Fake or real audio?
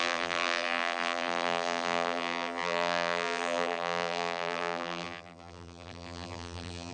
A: fake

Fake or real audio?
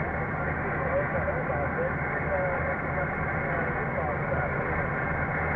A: real